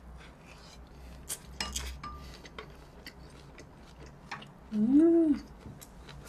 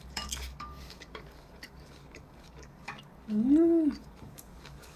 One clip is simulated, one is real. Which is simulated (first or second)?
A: second